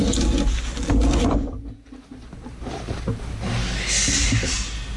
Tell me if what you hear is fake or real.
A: real